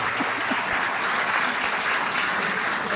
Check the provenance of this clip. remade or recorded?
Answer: recorded